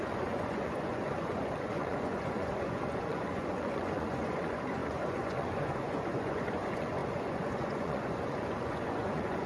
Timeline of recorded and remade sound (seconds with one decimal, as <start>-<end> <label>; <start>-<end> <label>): 0.0-9.5 remade